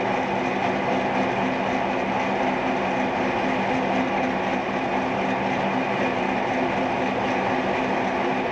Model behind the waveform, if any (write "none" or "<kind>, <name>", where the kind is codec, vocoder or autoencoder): none